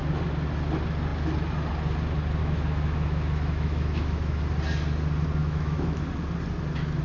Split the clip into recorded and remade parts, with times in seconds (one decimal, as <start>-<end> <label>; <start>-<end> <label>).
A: 0.0-2.4 recorded; 2.4-4.4 remade; 4.4-5.4 recorded; 5.4-6.0 remade; 6.0-7.0 recorded